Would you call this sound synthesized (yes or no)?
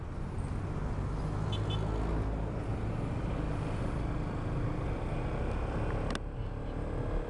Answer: no